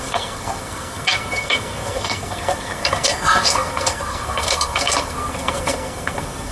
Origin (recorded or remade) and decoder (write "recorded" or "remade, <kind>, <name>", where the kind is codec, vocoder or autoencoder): remade, codec, SNAC